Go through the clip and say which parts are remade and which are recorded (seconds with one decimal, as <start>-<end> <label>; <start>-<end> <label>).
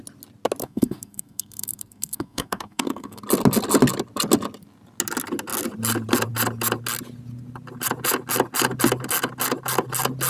0.0-0.6 recorded; 0.6-3.2 remade; 3.2-10.3 recorded